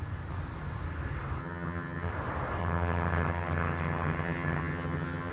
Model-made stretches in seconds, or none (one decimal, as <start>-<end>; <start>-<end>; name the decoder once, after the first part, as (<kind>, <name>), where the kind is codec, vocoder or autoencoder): 1.4-2.1 (vocoder, HiFi-GAN); 2.6-5.3